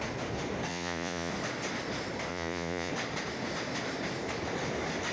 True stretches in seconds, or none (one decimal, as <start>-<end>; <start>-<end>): 0.0-0.7; 1.3-2.3; 2.9-5.1